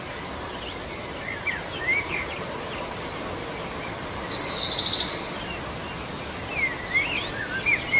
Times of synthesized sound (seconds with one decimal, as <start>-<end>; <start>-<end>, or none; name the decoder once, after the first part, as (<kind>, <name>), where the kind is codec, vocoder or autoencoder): 1.7-3.0 (vocoder, BigVGAN v2)